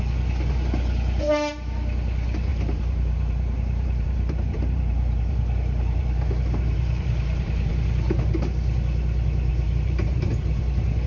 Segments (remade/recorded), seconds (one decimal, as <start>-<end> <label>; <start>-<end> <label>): 0.0-2.5 recorded; 2.5-7.7 remade; 7.7-9.5 recorded; 9.5-10.6 remade; 10.6-11.1 recorded

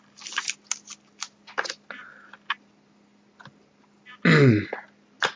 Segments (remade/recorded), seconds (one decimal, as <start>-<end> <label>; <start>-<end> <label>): 0.0-5.4 recorded

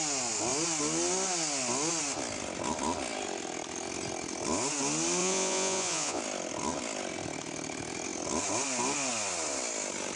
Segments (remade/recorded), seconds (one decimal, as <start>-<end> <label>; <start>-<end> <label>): 0.0-5.2 recorded; 5.2-6.2 remade; 6.2-10.2 recorded